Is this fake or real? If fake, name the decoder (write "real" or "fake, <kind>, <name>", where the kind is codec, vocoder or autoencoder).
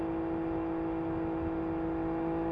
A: real